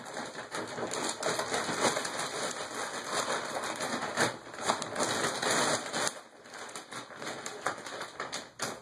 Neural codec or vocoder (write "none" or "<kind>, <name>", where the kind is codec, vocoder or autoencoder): none